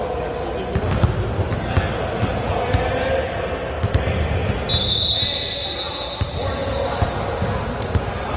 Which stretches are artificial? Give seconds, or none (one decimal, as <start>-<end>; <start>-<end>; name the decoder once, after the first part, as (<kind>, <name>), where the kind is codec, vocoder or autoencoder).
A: 2.3-2.9 (vocoder, Vocos); 6.6-7.2